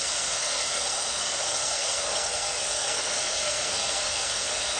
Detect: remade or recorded remade